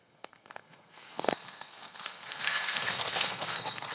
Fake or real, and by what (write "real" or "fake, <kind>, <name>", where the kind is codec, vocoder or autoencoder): fake, codec, SNAC